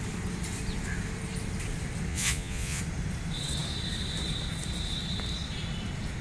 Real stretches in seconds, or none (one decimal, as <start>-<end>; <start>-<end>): 0.0-2.1; 2.8-6.2